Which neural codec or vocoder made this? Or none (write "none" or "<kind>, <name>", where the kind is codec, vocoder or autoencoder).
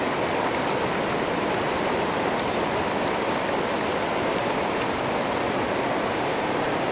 none